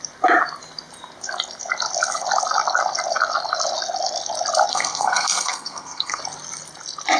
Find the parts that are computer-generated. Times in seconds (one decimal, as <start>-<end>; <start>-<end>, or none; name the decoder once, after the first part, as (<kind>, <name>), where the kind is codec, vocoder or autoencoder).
4.7-6.2 (codec, SNAC)